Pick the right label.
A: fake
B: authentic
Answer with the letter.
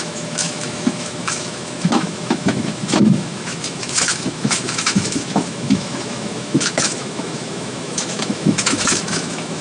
A